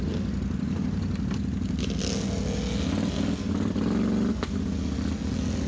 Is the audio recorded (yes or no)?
yes